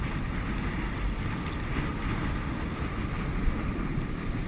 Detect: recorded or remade recorded